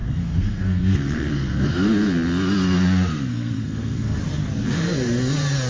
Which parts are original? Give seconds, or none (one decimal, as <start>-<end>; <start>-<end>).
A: 1.7-3.3; 4.2-5.7